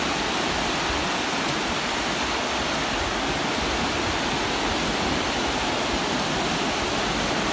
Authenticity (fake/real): real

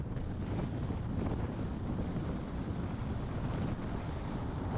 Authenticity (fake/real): real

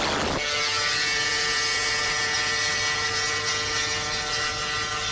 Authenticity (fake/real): real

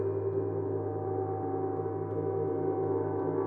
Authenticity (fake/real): real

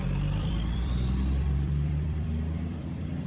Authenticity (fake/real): fake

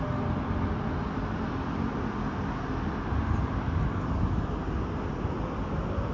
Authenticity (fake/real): real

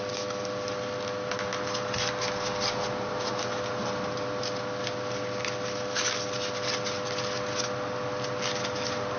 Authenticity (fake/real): real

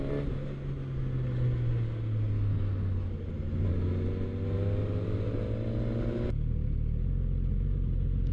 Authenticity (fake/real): real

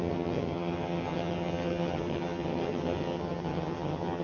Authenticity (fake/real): fake